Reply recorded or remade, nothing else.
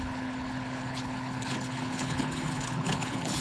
remade